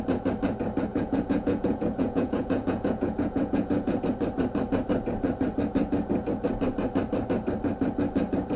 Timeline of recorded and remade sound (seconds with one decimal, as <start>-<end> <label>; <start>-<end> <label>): 0.0-0.9 recorded; 0.9-4.0 remade; 4.0-8.6 recorded